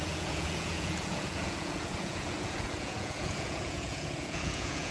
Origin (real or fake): fake